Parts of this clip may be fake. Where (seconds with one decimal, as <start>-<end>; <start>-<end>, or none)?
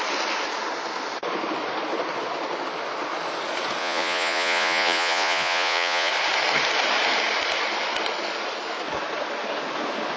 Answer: 3.8-6.1